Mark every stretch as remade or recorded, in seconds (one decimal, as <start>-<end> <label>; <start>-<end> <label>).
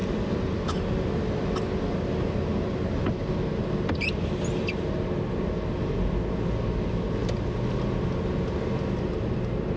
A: 0.0-9.8 recorded